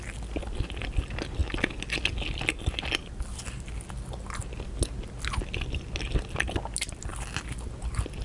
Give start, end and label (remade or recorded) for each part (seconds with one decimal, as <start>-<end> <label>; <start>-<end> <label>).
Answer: 0.0-8.2 recorded